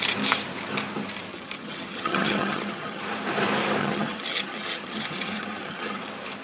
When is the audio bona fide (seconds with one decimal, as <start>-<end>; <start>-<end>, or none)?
0.0-1.3; 3.0-3.8; 6.0-6.4